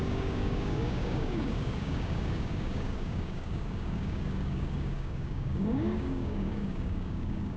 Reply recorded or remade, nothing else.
remade